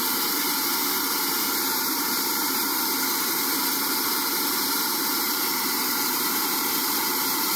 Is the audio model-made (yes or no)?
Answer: yes